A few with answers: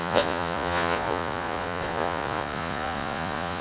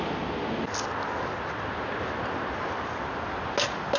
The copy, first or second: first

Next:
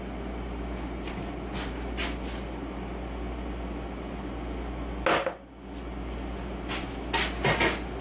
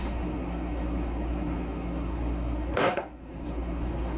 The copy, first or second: second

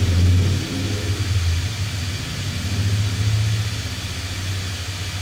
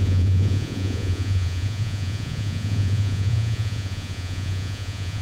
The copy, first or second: second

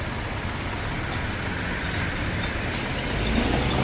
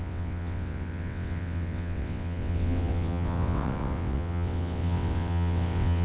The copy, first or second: second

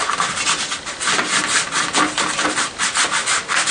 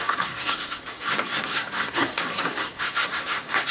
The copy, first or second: second